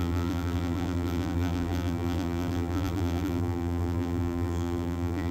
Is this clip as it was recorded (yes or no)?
no